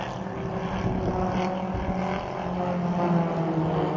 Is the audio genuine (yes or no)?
yes